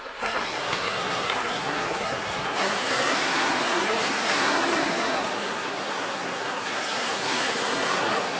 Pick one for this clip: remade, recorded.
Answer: remade